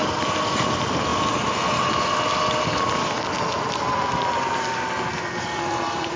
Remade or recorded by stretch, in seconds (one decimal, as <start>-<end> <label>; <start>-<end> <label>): 0.0-6.2 recorded